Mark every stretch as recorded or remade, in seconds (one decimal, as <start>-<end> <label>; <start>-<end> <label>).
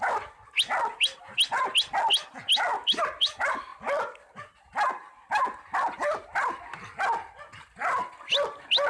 0.0-8.9 recorded